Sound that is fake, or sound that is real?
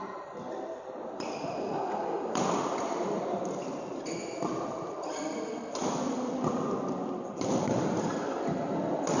fake